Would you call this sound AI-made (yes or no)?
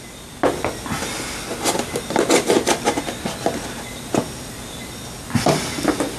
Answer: no